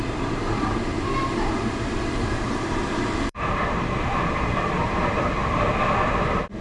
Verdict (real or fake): fake